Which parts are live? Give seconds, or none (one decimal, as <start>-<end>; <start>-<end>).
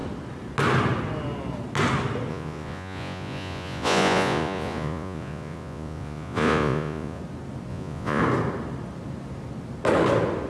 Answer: 0.0-2.3; 7.2-7.7; 8.2-10.5